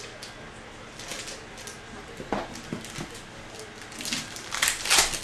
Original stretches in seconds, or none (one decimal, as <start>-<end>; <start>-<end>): 0.0-5.2